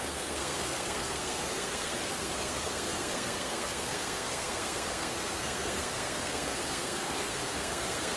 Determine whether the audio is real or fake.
fake